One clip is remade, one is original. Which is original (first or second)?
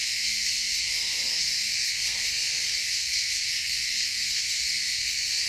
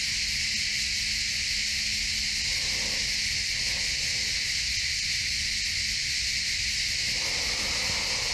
second